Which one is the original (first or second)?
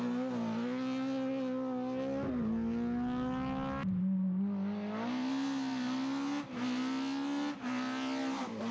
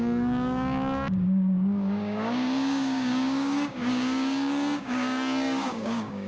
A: first